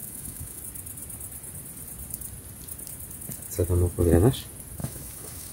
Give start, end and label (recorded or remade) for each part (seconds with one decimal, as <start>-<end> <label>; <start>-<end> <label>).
0.0-0.6 remade; 0.6-4.8 recorded; 4.8-5.5 remade